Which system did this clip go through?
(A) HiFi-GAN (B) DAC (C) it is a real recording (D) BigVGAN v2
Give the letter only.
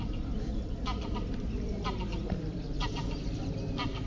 C